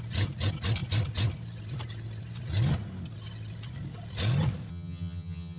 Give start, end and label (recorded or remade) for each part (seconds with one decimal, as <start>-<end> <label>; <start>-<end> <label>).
0.0-4.7 recorded; 4.7-5.6 remade